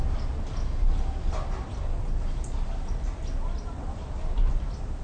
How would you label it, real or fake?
real